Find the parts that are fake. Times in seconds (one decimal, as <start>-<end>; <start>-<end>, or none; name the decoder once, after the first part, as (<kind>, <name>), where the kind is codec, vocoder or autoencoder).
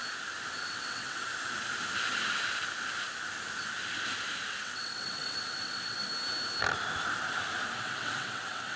0.7-1.3 (vocoder, WaveNeXt); 4.5-6.1; 7.8-8.8